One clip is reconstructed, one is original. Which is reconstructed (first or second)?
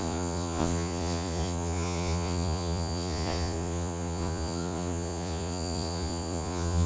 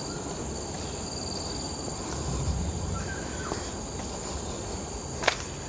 first